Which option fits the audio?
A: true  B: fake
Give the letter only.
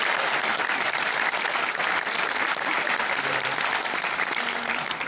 A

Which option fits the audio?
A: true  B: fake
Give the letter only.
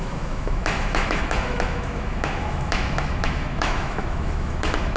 B